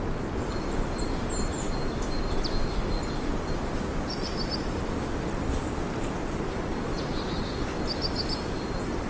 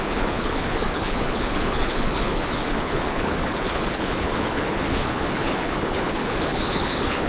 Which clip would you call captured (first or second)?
first